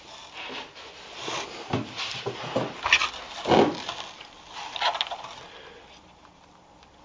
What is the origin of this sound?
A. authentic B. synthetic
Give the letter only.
A